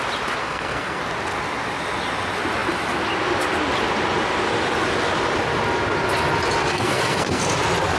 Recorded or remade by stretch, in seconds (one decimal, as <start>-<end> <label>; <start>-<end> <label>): 0.0-0.4 recorded; 0.4-1.0 remade; 1.0-6.7 recorded; 6.7-7.4 remade; 7.4-8.0 recorded